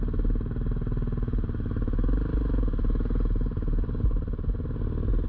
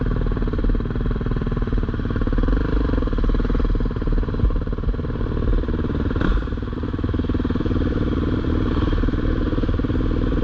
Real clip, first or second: first